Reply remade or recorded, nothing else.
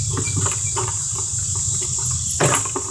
recorded